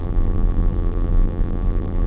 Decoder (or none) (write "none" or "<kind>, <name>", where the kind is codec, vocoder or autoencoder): vocoder, BigVGAN v2